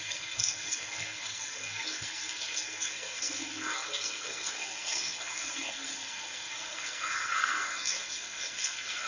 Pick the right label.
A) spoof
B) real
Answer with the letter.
A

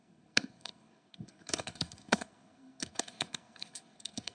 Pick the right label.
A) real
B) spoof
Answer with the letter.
B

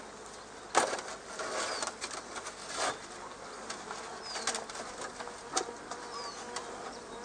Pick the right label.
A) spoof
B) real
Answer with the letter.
B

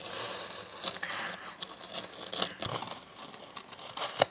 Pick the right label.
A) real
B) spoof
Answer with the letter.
A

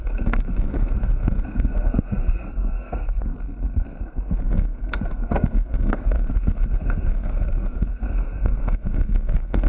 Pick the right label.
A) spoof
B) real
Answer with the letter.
A